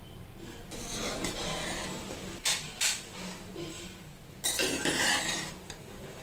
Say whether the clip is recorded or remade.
recorded